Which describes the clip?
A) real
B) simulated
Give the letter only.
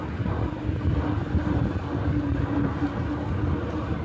A